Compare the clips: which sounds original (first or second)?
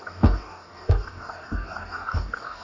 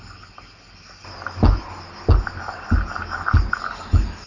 second